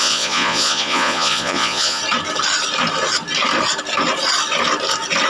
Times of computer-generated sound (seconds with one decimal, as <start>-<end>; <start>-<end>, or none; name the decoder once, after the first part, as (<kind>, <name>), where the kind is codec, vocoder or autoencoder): 0.0-2.0 (vocoder, Vocos)